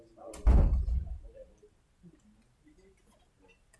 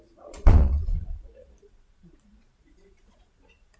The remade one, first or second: second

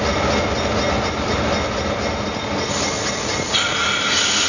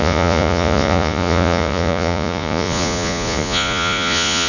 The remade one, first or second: second